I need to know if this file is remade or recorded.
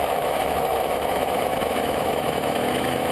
remade